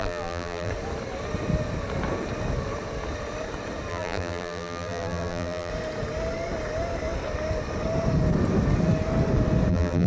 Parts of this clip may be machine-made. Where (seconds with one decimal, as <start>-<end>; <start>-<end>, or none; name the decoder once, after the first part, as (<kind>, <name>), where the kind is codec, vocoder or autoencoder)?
0.0-0.7 (vocoder, BigVGAN v2); 3.9-5.7; 9.7-10.1